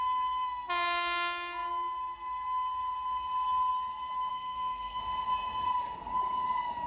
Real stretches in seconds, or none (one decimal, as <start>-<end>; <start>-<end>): 0.0-4.3; 5.0-6.9